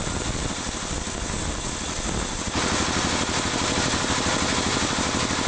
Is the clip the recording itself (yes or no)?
yes